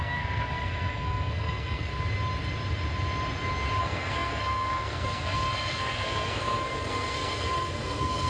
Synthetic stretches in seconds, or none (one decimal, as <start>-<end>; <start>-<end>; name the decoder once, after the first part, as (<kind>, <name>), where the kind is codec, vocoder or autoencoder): 0.0-1.9 (codec, SNAC); 3.8-8.3